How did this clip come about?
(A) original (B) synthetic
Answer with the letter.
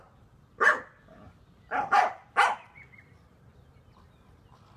A